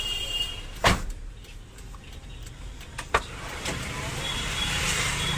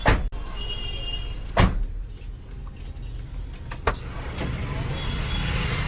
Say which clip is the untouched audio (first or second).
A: second